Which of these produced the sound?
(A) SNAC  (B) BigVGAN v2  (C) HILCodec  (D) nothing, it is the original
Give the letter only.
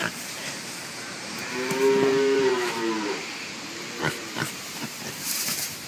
B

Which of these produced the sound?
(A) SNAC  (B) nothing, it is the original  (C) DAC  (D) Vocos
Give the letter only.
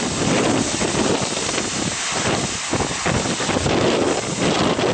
B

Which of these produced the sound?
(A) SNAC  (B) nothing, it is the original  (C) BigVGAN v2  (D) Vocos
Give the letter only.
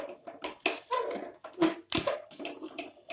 B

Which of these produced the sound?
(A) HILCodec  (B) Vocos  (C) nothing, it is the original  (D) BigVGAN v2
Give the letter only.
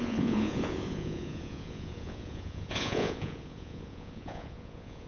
B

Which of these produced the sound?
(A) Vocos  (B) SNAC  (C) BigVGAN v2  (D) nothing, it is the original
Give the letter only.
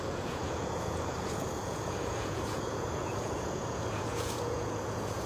A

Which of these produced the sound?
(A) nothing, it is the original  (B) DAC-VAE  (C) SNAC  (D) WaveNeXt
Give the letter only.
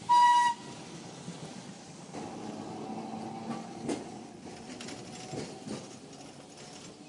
A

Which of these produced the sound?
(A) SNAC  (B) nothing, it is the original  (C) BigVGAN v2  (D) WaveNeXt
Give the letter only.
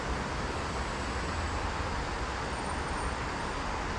B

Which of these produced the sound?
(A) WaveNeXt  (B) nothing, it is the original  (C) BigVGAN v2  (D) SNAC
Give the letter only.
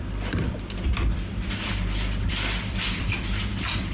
C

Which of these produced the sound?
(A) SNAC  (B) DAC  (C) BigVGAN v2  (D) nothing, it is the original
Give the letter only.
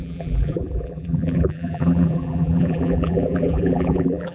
C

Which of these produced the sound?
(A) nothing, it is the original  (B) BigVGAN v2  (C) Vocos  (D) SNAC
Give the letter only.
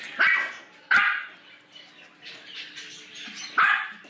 A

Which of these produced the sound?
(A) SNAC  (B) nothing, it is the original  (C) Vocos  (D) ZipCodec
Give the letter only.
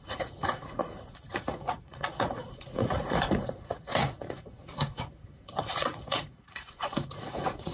C